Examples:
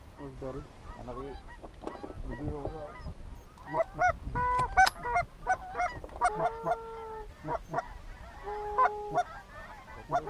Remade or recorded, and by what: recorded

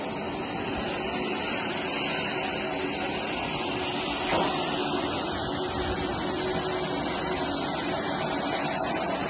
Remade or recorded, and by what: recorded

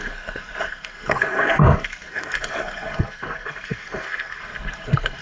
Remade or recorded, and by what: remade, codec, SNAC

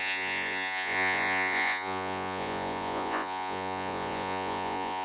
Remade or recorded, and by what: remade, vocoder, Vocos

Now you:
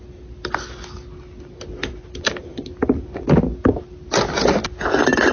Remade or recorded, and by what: recorded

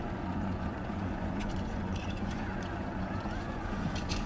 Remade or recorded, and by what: remade, vocoder, Vocos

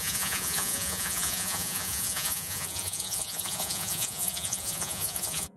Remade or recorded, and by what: remade, vocoder, Vocos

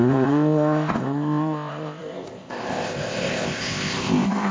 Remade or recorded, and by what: remade, codec, ZipCodec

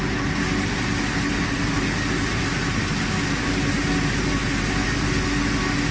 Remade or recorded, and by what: recorded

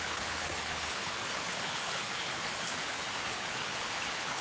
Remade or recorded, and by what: remade, codec, HILCodec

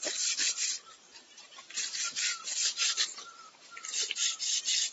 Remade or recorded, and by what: recorded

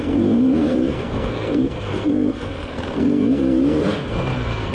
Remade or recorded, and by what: remade, codec, SNAC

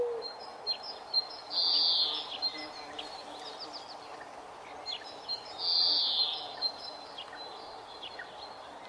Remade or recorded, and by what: recorded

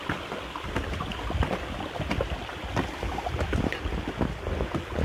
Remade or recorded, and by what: recorded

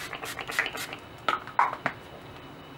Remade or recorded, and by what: recorded